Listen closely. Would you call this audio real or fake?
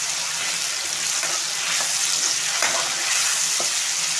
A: real